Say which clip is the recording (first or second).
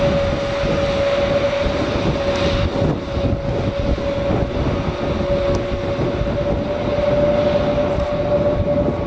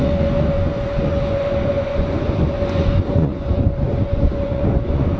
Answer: first